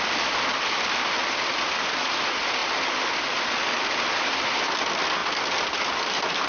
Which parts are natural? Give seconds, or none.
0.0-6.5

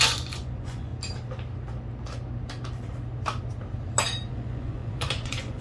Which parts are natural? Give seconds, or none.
0.9-4.3